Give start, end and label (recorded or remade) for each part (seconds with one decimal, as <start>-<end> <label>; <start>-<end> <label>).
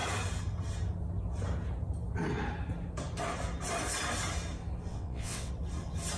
0.0-4.9 recorded; 4.9-5.5 remade; 5.5-6.2 recorded